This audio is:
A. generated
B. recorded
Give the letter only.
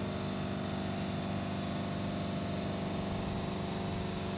B